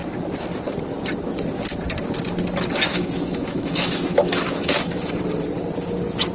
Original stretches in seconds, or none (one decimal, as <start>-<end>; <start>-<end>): 0.0-2.9; 5.1-6.3